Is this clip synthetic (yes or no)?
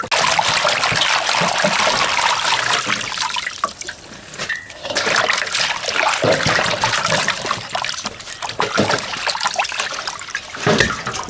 no